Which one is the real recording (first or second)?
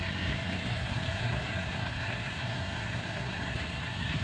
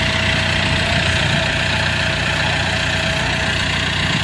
second